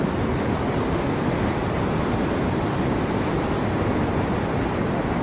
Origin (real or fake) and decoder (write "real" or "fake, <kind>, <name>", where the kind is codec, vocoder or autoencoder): real